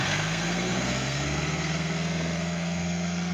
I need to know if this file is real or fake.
fake